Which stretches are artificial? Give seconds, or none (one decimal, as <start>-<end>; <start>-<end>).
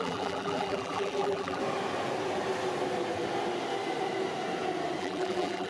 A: 0.0-1.6; 5.0-5.7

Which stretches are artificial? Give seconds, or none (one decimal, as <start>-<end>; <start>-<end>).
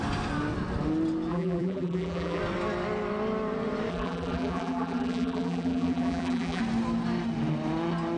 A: 1.3-2.4; 3.9-6.6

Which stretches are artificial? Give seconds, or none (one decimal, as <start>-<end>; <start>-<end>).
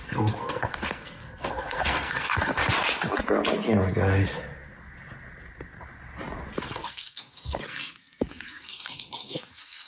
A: 0.0-2.6; 6.6-9.9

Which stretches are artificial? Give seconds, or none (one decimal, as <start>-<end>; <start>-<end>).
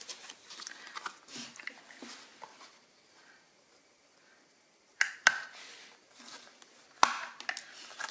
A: none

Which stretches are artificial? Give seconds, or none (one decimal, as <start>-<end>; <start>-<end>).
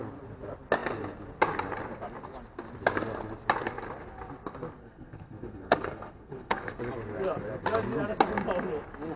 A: 4.8-6.8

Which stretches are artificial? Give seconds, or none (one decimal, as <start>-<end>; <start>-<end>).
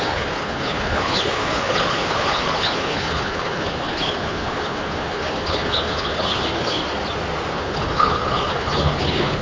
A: 0.0-6.8; 7.5-9.4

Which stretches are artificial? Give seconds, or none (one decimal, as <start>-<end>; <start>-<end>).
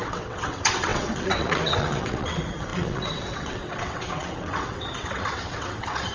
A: 0.0-6.1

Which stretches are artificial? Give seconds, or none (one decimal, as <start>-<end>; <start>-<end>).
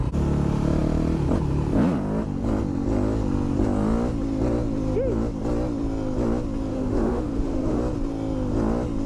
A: 6.7-7.8